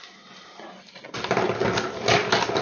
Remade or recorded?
recorded